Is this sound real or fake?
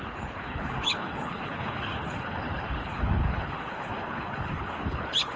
fake